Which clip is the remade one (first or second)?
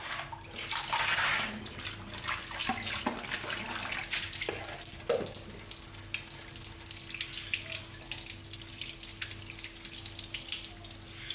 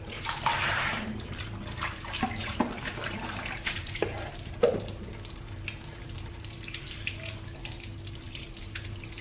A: second